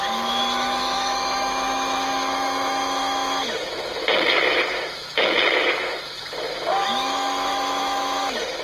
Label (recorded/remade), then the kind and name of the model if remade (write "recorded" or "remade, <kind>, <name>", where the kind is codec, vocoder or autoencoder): remade, autoencoder, DAC-VAE